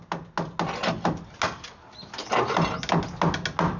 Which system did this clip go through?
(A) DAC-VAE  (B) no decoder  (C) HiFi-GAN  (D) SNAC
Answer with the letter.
B